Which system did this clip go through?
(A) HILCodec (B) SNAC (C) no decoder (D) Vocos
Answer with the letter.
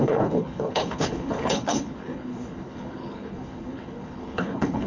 A